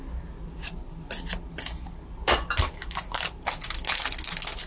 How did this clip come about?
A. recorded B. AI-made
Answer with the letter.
A